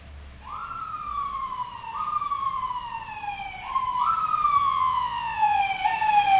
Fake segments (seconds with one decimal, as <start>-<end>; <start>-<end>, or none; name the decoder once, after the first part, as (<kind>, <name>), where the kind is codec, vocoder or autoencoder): 4.6-5.6 (vocoder, Vocos)